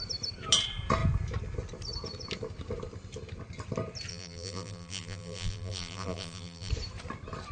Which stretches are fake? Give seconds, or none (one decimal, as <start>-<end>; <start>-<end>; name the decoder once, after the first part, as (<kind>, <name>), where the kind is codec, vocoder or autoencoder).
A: 4.1-6.7 (vocoder, BigVGAN v2)